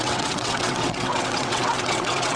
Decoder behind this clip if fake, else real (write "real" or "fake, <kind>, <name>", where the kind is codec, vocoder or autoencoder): fake, vocoder, WaveNeXt